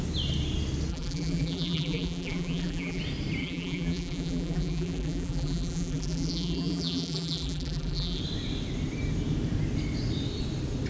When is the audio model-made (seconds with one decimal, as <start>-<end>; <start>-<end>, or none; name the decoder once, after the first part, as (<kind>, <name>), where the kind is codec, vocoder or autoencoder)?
0.9-3.0 (vocoder, BigVGAN v2); 3.4-8.2

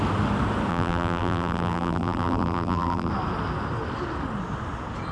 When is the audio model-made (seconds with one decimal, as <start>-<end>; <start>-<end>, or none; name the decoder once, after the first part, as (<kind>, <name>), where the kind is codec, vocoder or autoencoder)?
0.7-3.1 (vocoder, BigVGAN v2)

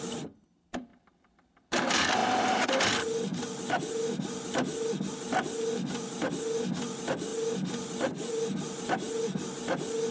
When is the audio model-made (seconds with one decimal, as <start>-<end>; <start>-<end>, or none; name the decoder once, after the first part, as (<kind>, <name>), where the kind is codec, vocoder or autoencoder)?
0.9-1.8 (vocoder, BigVGAN v2)

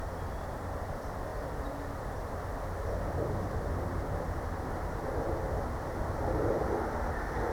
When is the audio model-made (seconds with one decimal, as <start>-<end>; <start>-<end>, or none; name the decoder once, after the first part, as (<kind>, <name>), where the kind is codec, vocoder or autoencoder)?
0.0-1.3 (vocoder, BigVGAN v2); 3.2-7.5

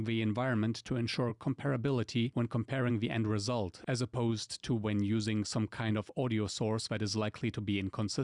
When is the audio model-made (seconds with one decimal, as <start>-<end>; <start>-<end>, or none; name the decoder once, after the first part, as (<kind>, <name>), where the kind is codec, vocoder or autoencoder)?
4.3-5.9 (vocoder, BigVGAN v2)

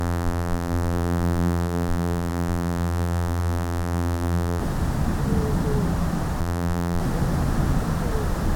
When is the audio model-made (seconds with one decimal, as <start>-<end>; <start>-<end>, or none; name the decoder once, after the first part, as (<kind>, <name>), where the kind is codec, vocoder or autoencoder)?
0.0-4.6 (vocoder, BigVGAN v2); 6.4-7.0

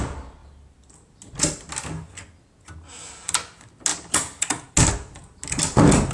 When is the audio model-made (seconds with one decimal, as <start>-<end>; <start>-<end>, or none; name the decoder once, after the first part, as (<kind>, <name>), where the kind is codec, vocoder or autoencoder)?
none